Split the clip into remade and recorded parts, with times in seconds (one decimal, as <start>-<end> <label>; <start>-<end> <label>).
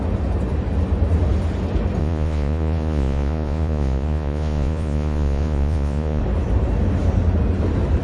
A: 0.0-2.0 recorded; 2.0-6.2 remade; 6.2-8.0 recorded